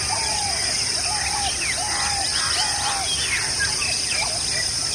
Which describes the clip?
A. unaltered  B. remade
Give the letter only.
A